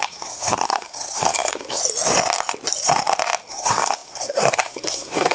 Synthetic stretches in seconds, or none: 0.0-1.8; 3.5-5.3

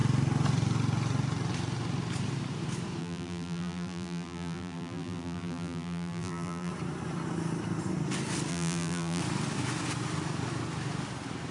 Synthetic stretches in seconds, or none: 3.0-6.7; 8.5-9.2